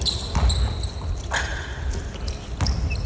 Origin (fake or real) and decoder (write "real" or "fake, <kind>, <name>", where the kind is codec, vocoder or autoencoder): real